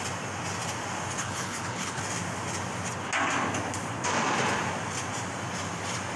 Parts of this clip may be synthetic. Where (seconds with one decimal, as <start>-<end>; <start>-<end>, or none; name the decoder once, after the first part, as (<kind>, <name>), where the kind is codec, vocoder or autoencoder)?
1.2-2.0 (codec, HILCodec)

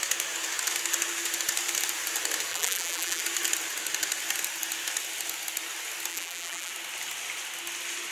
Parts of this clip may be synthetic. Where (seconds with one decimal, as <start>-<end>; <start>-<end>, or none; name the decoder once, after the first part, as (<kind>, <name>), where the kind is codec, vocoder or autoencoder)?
2.5-3.2 (vocoder, BigVGAN v2); 6.1-6.7

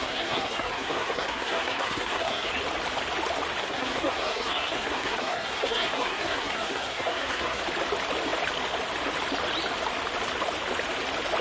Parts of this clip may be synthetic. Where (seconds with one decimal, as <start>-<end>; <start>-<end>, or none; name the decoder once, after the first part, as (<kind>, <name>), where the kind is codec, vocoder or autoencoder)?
0.0-2.5 (codec, SNAC); 3.6-7.6

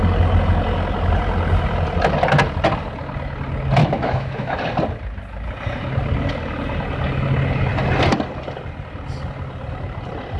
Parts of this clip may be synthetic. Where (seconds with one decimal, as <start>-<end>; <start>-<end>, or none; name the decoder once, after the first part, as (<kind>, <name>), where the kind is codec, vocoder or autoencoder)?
3.8-4.6 (autoencoder, DAC-VAE)